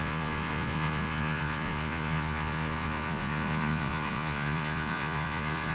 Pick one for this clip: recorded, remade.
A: remade